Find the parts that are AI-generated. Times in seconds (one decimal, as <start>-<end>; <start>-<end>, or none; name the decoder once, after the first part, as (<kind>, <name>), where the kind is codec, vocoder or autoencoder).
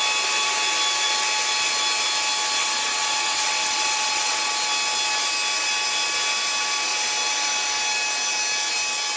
2.6-4.5 (vocoder, WaveNeXt)